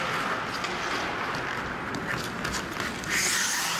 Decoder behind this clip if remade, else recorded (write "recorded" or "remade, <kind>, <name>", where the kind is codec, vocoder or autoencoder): recorded